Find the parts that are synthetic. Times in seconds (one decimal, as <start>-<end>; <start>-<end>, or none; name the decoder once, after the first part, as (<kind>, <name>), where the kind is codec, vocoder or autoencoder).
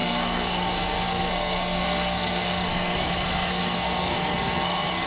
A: 0.0-5.1 (codec, SNAC)